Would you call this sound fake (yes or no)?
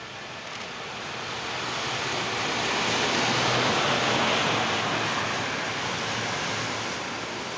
no